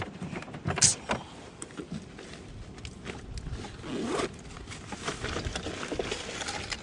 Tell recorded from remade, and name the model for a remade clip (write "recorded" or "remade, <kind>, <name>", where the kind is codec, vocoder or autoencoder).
recorded